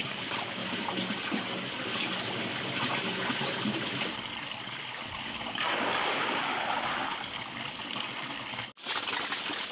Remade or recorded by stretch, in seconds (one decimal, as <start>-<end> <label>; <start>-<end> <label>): 0.0-0.6 remade; 0.6-5.2 recorded; 5.2-6.5 remade; 6.5-9.7 recorded